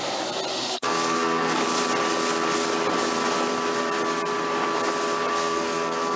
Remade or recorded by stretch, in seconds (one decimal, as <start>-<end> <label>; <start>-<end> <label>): 0.0-0.7 recorded; 0.7-1.6 remade; 1.6-5.3 recorded; 5.3-6.2 remade